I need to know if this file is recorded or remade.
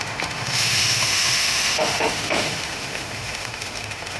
remade